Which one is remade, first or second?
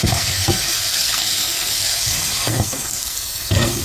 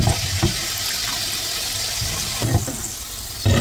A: first